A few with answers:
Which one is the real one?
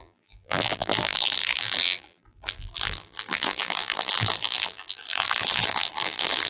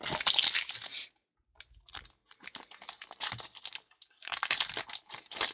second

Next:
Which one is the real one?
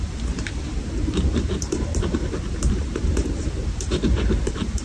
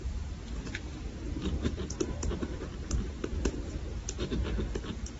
second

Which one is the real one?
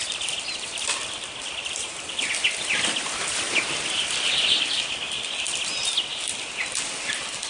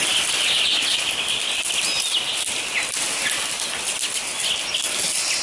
second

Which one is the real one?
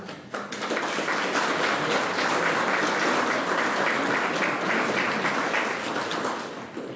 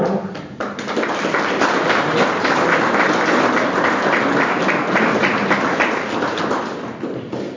second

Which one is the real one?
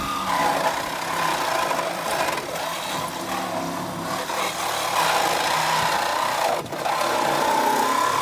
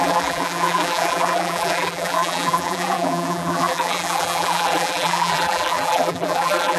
first